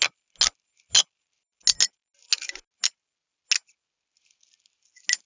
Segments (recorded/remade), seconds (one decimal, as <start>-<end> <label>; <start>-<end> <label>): 0.0-5.3 recorded